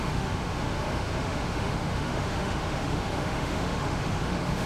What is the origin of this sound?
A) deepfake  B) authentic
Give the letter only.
A